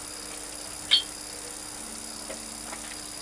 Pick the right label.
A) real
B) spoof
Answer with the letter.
A